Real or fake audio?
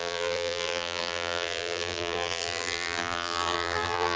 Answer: fake